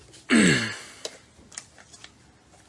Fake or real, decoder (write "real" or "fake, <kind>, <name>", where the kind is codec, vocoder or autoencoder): real